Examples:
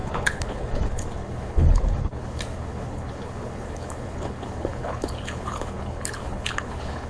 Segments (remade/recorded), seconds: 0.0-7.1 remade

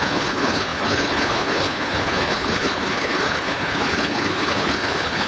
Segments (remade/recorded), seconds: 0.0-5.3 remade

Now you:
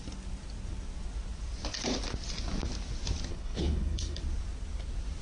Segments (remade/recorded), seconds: 0.0-3.3 recorded; 3.3-4.2 remade; 4.2-5.2 recorded

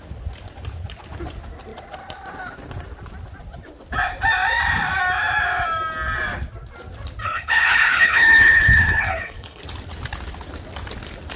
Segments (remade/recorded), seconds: 0.0-7.2 recorded; 7.2-9.6 remade; 9.6-11.4 recorded

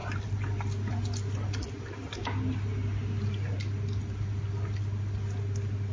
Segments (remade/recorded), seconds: 0.0-5.9 recorded

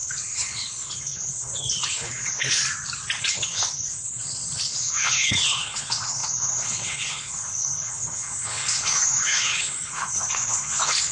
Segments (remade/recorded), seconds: 0.0-2.6 remade; 2.6-3.2 recorded; 3.2-11.1 remade